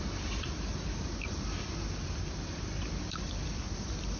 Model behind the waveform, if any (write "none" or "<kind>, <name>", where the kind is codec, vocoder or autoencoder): vocoder, BigVGAN v2